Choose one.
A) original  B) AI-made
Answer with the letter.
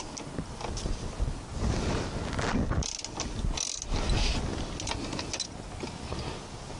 A